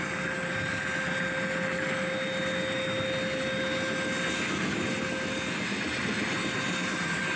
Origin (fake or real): real